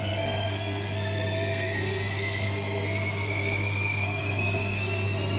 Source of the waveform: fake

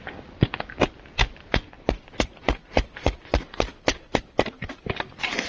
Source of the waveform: real